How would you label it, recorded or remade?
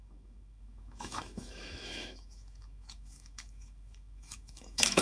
remade